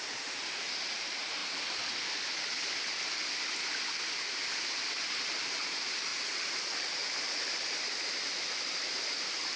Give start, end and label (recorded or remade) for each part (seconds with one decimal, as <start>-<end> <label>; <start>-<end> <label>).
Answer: 0.0-1.4 remade; 1.4-5.1 recorded; 5.1-6.1 remade; 6.1-6.6 recorded; 6.6-7.0 remade; 7.0-8.4 recorded; 8.4-9.6 remade